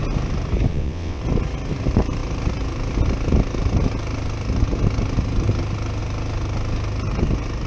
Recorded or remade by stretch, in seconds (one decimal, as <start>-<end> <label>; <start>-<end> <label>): 0.0-0.7 recorded; 0.7-1.2 remade; 1.2-7.7 recorded